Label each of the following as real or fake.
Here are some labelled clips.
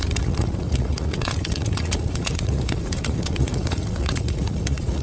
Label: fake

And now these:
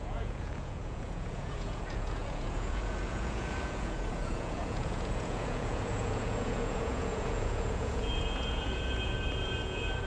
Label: fake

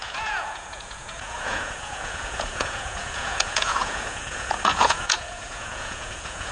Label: fake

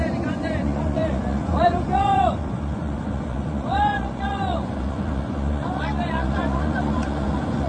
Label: fake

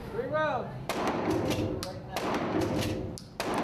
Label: real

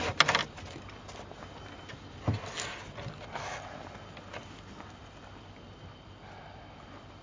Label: real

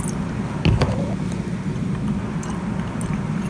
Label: real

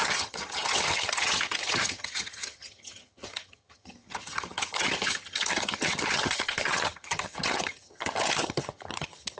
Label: fake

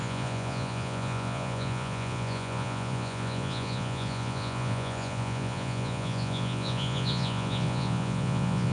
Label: fake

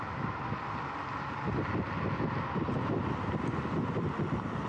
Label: real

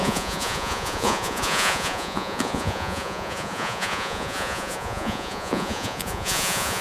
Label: fake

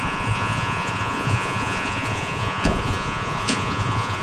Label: fake